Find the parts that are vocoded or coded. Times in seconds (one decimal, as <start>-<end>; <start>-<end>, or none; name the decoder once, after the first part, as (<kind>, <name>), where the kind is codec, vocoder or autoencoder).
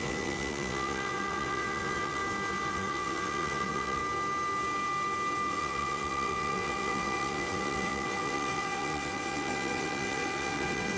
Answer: 0.0-2.2 (vocoder, WaveNeXt); 2.7-4.0; 5.5-11.0